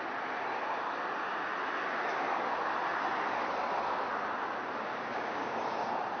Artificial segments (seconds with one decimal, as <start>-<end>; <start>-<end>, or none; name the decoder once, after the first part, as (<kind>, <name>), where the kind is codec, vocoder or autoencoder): 4.9-5.6 (codec, DAC)